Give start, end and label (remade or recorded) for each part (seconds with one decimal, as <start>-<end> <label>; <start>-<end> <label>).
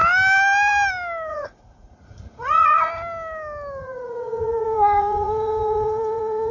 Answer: 0.0-1.3 recorded; 1.3-2.9 remade; 2.9-3.8 recorded; 3.8-6.5 remade